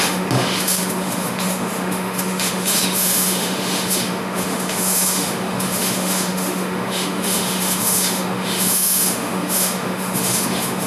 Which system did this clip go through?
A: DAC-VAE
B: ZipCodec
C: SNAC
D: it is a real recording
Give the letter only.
A